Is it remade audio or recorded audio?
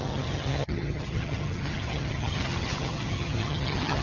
remade